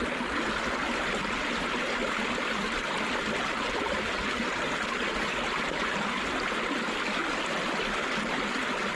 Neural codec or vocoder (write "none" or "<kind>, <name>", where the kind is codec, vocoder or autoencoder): none